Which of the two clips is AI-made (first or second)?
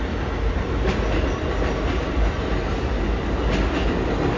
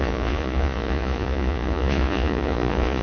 second